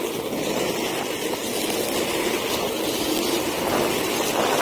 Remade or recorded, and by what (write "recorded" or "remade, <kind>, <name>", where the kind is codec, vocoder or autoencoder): recorded